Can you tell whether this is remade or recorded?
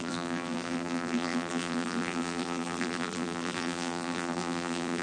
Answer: remade